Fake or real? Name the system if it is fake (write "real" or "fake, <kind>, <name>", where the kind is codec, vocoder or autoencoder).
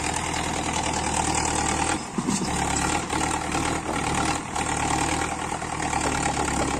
real